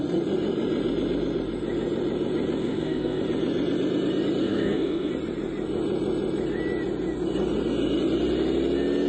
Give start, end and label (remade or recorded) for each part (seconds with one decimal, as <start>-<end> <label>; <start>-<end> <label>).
0.0-2.6 recorded; 2.6-3.2 remade; 3.2-4.4 recorded; 4.4-5.1 remade; 5.1-9.1 recorded